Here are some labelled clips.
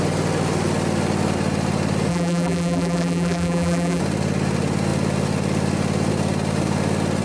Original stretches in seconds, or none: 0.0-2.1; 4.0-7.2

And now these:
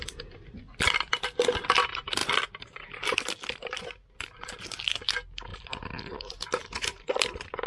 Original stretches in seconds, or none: 0.0-2.2; 4.6-5.5